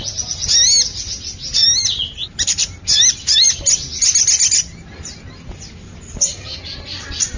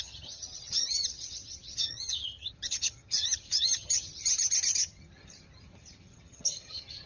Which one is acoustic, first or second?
first